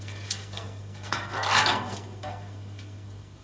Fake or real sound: fake